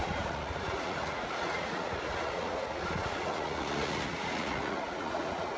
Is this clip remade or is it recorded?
remade